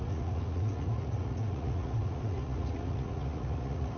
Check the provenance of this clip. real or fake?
fake